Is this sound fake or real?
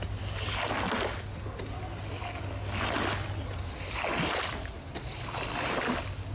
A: real